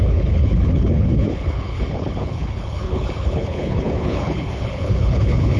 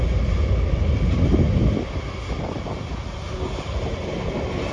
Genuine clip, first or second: second